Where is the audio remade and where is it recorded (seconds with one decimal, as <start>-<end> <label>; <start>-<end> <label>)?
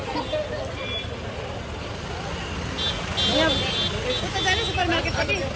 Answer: 0.0-5.6 recorded